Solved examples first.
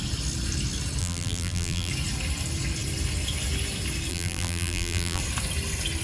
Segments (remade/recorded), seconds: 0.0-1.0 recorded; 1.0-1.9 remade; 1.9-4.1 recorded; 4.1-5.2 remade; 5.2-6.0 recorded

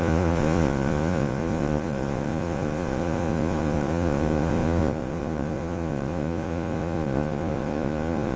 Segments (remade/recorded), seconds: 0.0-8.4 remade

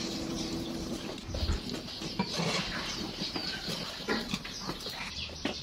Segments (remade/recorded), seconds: 0.0-1.2 remade; 1.2-2.0 recorded; 2.0-3.4 remade; 3.4-4.1 recorded; 4.1-5.6 remade